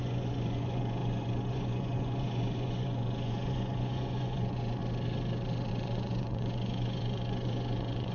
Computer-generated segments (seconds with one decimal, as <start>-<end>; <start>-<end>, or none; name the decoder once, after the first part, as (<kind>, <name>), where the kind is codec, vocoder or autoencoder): 0.0-4.8 (vocoder, Vocos); 5.7-8.1